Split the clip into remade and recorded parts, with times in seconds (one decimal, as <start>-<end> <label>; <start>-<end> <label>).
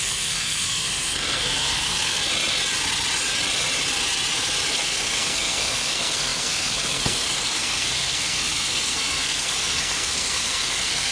0.0-2.2 remade; 2.2-4.7 recorded; 4.7-11.1 remade